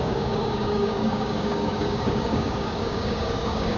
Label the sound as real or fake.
fake